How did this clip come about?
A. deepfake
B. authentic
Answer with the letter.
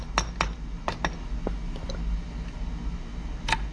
B